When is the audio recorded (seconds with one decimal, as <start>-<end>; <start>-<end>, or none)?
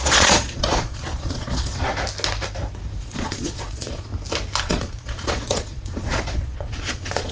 1.9-3.0; 4.1-4.6